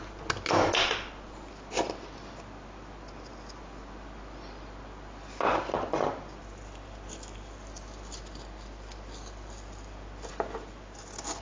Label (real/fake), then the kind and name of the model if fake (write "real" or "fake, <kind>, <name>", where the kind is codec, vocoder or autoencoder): real